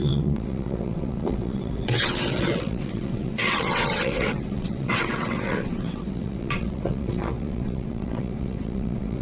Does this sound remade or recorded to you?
remade